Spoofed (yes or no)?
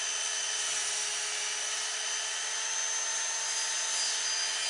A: no